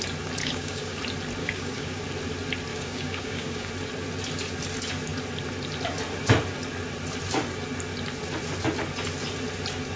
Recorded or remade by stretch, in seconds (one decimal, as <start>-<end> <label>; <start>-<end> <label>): 0.0-0.4 recorded; 0.4-1.0 remade; 1.0-1.4 recorded; 1.4-2.0 remade; 2.0-2.7 recorded; 2.7-3.7 remade; 3.7-10.0 recorded